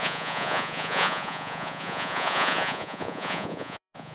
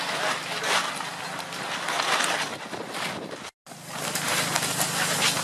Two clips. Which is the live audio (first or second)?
second